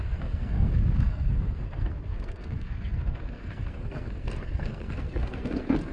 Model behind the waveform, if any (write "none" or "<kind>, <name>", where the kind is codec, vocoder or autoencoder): codec, SNAC